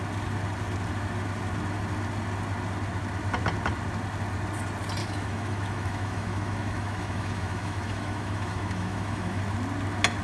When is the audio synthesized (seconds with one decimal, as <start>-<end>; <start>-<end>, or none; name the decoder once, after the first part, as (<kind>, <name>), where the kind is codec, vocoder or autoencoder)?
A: 5.0-9.4 (autoencoder, DAC-VAE)